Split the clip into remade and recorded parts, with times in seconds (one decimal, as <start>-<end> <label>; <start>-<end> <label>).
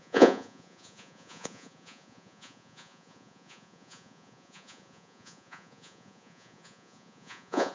0.0-7.7 remade